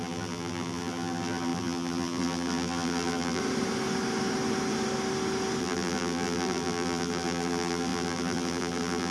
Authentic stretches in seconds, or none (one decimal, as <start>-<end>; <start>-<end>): 3.4-5.6

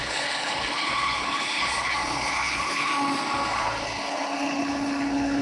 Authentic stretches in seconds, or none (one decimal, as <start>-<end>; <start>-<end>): 2.9-3.5

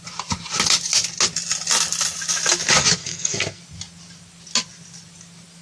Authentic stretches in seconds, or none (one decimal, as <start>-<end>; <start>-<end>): 0.0-3.0; 3.6-5.6

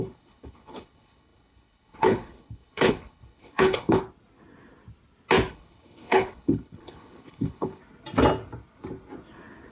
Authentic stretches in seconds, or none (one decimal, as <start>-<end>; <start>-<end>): 4.0-5.5; 7.8-9.7

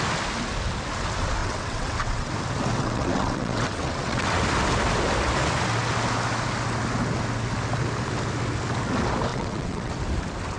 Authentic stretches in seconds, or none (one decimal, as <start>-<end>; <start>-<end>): 0.0-1.4; 2.3-2.8; 4.4-9.3; 9.9-10.6

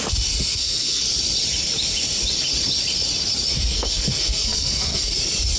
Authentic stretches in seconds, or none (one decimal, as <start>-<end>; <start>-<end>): 0.0-0.5; 1.0-3.7; 5.1-5.6

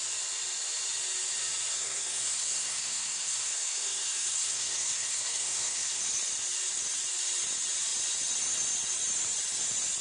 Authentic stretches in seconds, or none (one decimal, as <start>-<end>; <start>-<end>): 0.0-1.7; 6.0-10.0